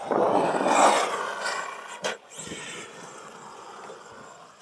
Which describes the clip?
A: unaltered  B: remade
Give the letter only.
B